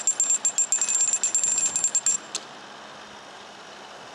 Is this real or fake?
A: real